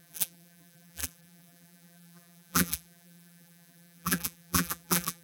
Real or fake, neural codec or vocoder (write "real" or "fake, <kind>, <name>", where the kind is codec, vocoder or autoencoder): fake, vocoder, BigVGAN v2